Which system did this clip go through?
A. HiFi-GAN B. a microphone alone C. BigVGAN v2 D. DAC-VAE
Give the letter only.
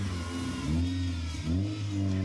B